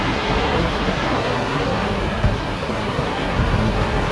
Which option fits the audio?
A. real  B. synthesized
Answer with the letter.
B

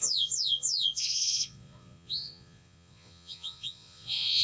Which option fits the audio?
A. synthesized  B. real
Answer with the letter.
A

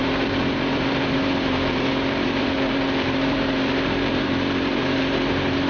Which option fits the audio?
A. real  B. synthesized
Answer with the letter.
B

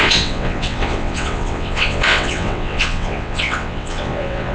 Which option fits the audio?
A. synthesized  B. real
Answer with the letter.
A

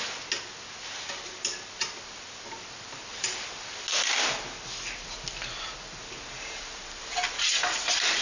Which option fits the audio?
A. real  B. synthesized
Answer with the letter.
A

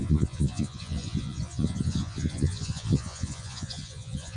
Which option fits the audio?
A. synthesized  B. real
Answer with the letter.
A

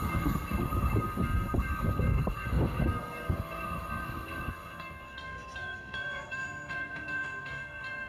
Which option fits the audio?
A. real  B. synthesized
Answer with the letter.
B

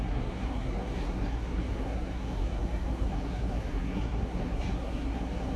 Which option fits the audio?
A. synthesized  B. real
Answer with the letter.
A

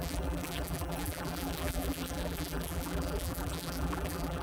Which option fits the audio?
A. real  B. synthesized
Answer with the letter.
B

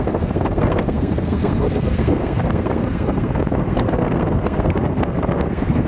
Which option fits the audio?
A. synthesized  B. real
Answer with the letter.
A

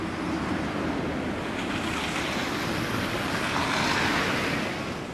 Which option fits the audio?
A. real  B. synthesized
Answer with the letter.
A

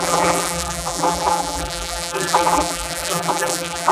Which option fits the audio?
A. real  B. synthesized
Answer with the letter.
B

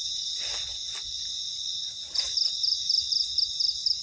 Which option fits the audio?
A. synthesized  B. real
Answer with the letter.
B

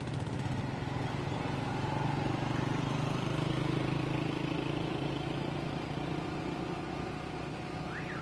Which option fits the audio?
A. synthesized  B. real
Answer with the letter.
B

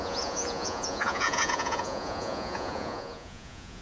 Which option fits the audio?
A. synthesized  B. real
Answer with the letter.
A